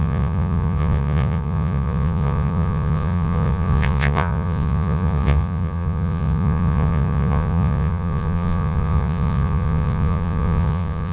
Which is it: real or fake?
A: fake